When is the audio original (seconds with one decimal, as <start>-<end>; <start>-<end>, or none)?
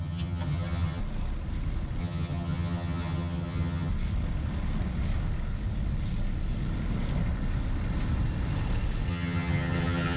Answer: 1.0-2.0; 3.9-9.1